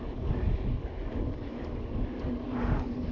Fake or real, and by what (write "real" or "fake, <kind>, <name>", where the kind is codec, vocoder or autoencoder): fake, codec, DAC